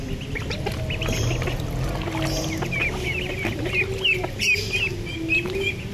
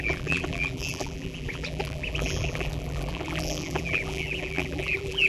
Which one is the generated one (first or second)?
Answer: second